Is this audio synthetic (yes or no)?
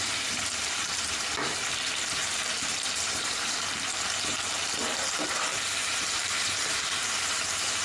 yes